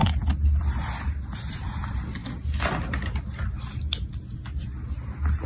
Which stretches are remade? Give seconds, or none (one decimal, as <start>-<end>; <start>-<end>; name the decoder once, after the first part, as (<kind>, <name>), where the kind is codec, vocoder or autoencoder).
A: 0.0-0.6 (vocoder, BigVGAN v2)